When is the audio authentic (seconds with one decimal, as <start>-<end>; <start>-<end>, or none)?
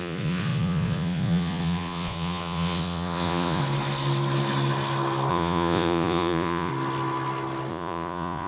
3.6-5.3; 6.7-7.7